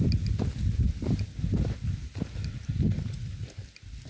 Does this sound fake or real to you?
real